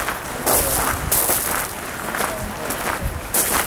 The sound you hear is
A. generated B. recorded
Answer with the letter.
B